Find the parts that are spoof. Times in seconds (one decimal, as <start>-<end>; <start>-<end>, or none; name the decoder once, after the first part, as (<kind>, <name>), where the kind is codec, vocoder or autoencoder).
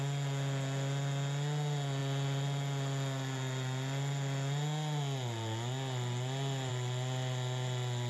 none